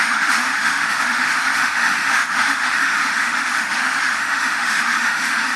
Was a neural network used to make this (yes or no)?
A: yes